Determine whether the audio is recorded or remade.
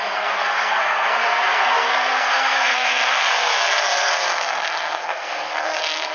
remade